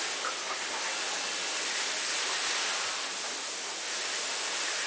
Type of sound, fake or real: real